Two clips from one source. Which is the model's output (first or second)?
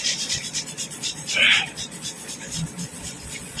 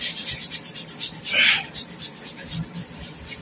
first